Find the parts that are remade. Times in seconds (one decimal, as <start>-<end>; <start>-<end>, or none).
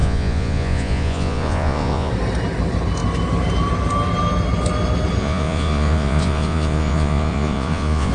0.0-2.1; 5.2-8.1